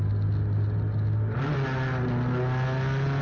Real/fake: real